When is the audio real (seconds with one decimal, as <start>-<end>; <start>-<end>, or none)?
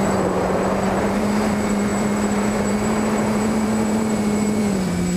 none